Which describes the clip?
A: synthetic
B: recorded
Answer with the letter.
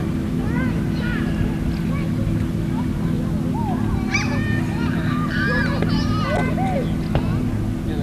B